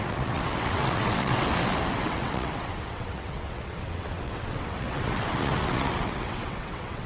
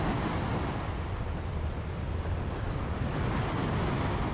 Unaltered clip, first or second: second